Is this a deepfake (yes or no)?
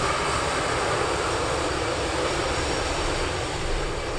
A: no